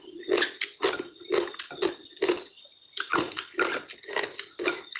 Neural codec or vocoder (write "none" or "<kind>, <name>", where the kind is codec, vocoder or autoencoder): none